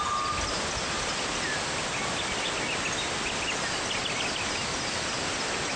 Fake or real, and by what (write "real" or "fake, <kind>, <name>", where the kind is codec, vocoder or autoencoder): real